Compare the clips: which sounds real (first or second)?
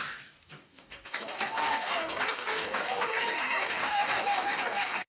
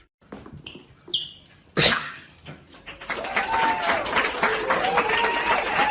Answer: second